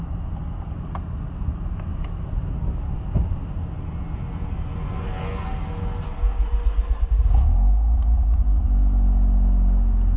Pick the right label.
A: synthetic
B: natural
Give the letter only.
B